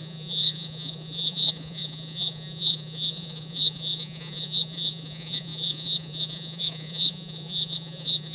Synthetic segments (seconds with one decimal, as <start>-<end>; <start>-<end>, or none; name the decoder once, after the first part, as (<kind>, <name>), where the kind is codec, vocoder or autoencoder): 0.0-8.3 (vocoder, Vocos)